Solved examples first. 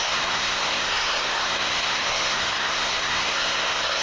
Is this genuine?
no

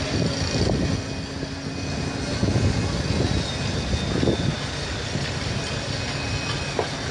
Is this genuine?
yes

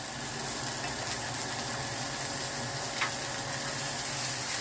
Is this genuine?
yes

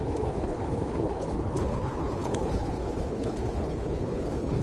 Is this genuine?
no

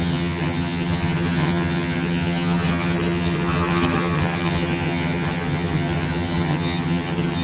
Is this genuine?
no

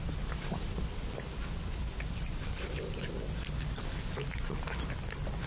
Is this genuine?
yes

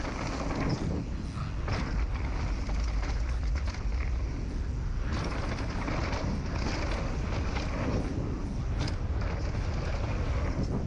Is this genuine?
yes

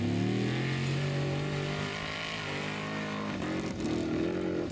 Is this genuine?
yes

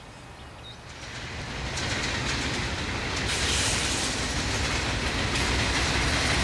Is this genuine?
yes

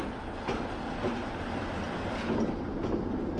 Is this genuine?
yes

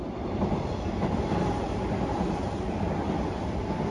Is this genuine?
no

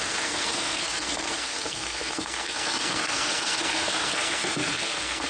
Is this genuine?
no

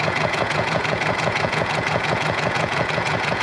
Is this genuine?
no